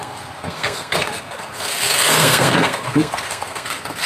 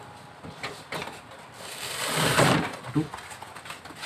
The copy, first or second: first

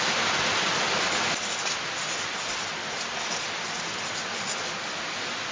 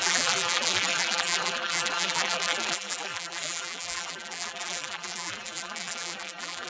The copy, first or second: second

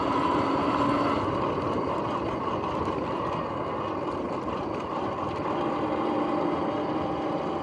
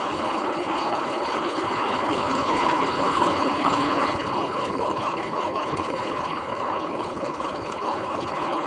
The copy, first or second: second